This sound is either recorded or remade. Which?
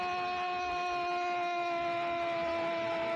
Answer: recorded